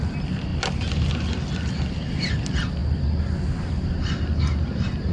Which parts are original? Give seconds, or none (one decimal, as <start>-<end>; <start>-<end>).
0.0-5.1